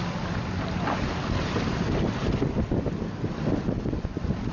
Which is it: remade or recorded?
recorded